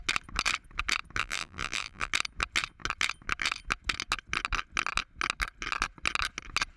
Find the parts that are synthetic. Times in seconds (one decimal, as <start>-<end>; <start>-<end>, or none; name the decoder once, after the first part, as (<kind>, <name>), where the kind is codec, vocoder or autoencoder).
1.2-2.1 (vocoder, BigVGAN v2)

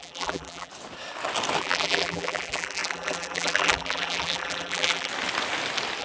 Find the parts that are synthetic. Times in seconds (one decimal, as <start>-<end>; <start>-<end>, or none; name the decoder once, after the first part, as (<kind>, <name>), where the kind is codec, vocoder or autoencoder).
0.0-0.7 (vocoder, BigVGAN v2); 1.6-5.1